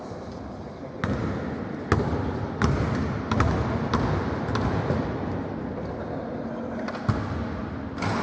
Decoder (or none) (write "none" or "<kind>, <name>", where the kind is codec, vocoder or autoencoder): none